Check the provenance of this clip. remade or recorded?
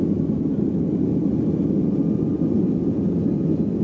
recorded